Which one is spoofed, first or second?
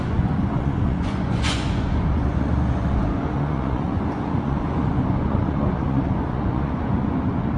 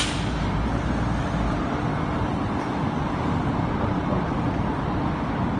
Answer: first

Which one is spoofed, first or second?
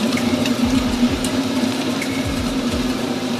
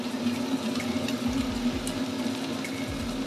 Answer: first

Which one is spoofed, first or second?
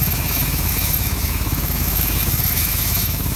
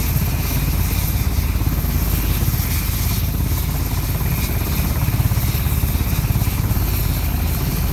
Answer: first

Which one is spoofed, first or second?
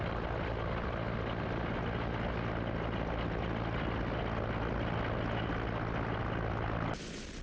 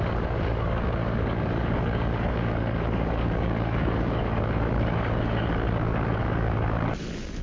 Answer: second